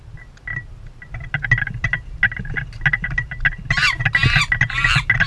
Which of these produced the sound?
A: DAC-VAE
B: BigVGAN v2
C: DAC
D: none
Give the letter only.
D